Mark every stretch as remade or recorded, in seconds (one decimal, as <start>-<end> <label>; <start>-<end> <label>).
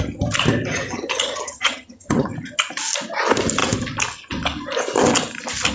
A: 0.0-0.7 recorded; 0.7-2.3 remade; 2.3-5.7 recorded